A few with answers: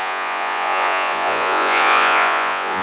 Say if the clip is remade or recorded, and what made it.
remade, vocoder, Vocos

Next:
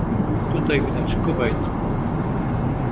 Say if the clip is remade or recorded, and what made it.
recorded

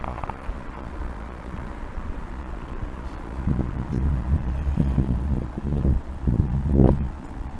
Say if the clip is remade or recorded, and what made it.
remade, vocoder, Vocos